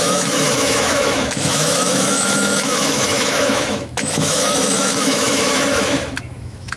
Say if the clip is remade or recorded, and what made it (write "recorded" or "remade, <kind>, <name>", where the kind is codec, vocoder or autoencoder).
remade, autoencoder, DAC-VAE